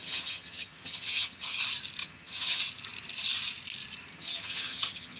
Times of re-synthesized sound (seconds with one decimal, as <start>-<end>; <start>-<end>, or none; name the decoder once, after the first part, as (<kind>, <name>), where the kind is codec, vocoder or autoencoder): 0.0-1.6 (vocoder, HiFi-GAN); 2.0-2.6; 4.1-5.2